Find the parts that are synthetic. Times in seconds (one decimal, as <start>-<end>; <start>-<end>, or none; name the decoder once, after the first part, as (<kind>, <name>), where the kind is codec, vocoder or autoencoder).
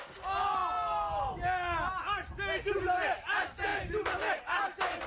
none